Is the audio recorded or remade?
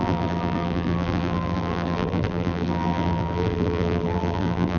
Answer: remade